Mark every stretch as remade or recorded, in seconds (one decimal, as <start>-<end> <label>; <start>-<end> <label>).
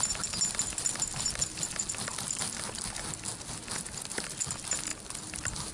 0.0-5.7 recorded